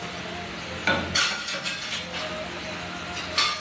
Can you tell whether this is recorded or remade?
recorded